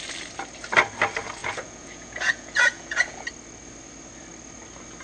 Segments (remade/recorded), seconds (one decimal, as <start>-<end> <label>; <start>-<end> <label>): 0.0-1.4 recorded; 1.4-3.3 remade; 3.3-5.0 recorded